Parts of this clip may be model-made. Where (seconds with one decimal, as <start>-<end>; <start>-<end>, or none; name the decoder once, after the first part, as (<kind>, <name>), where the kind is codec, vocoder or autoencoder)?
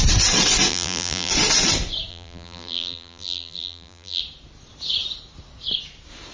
0.7-1.3 (vocoder, BigVGAN v2); 2.1-4.2